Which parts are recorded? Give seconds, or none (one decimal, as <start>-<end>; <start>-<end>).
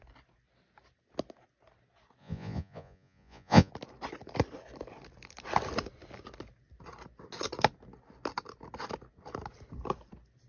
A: 0.0-2.2; 3.7-10.5